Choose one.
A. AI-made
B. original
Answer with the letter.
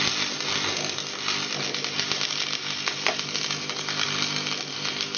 B